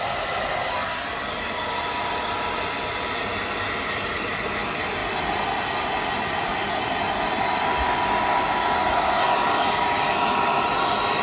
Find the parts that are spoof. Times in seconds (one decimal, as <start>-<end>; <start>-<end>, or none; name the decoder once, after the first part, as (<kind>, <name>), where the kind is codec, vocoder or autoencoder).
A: none